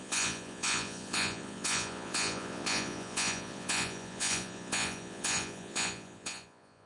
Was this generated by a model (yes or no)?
yes